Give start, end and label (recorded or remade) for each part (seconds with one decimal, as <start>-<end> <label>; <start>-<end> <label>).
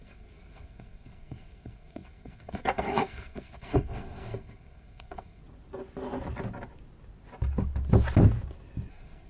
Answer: 0.0-5.4 remade; 5.4-8.9 recorded; 8.9-9.3 remade